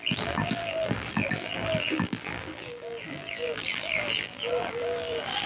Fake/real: fake